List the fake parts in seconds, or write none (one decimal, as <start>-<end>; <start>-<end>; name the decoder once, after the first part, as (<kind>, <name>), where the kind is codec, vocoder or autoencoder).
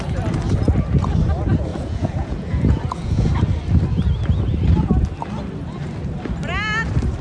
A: 1.7-3.3 (vocoder, Vocos)